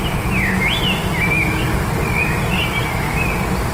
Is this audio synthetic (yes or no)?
no